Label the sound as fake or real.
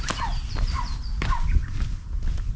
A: real